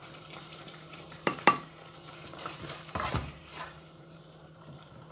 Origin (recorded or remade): remade